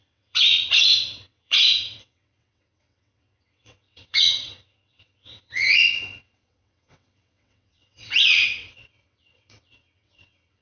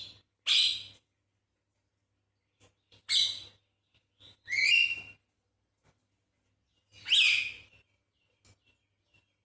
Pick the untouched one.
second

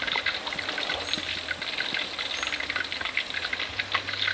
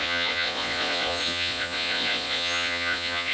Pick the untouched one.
first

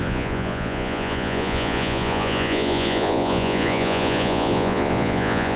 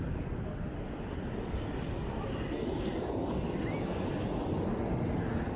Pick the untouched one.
second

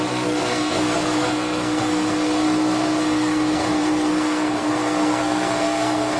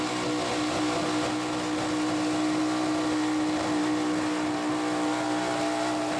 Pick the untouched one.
second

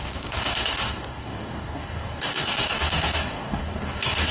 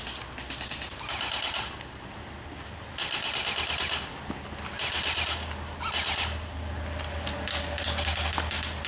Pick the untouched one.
second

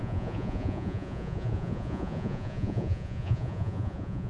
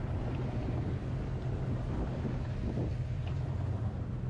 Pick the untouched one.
second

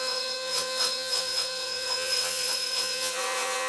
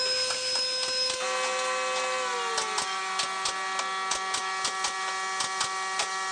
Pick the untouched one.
second